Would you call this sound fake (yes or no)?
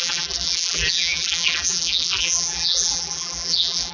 yes